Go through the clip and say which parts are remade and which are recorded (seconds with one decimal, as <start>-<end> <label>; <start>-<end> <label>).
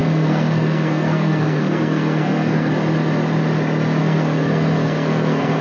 0.0-2.7 remade; 2.7-4.0 recorded; 4.0-5.6 remade